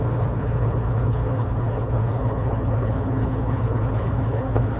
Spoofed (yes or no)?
yes